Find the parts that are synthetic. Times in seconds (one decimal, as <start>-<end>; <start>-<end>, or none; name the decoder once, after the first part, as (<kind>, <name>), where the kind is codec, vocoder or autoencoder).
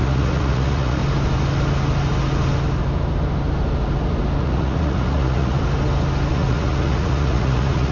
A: 0.0-1.0 (vocoder, Vocos); 4.4-5.6; 6.3-7.9